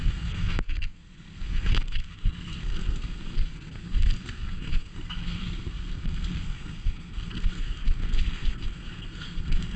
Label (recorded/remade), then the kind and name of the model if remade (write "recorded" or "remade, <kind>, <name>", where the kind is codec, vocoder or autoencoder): remade, codec, SNAC